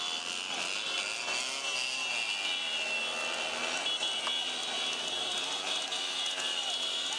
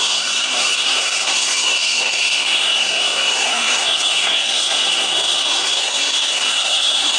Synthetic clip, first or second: second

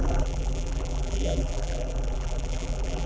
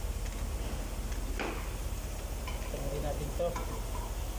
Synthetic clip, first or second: first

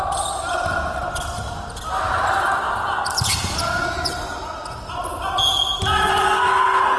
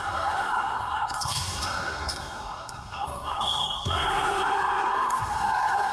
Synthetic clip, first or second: second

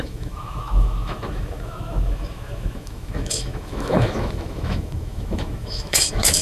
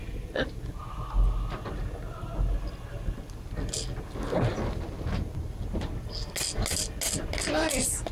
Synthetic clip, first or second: first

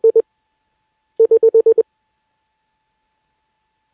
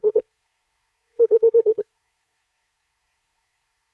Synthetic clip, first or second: second